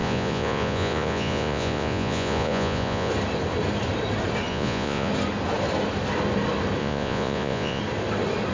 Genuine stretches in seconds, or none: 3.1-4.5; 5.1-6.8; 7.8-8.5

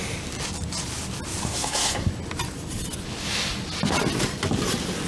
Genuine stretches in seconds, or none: 0.0-1.5; 2.1-5.1

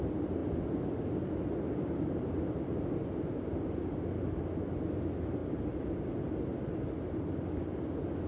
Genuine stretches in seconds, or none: 0.0-8.3

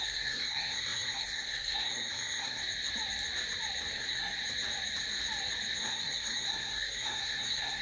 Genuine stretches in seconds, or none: 2.6-3.9; 4.4-5.8